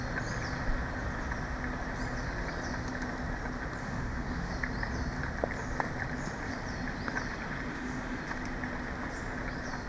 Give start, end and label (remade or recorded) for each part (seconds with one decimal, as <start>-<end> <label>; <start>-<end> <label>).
0.0-3.8 recorded; 3.8-4.5 remade; 4.5-7.7 recorded; 7.7-8.2 remade; 8.2-9.9 recorded